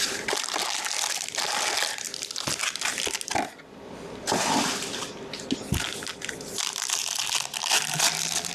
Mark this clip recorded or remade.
recorded